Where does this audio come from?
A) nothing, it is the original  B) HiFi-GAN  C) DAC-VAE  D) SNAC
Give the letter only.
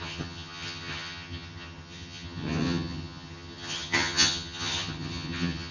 B